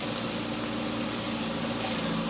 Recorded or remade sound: recorded